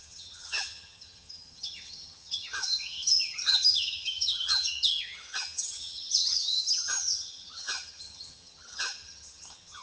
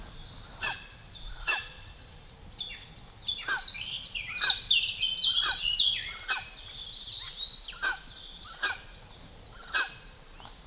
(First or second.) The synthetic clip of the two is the first